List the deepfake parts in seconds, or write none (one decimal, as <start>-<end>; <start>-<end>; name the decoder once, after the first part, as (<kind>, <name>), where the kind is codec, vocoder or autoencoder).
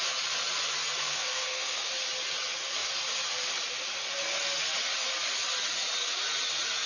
1.0-1.9 (codec, SNAC)